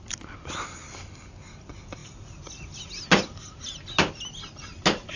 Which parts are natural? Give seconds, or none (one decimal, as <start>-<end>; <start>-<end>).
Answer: 0.0-5.2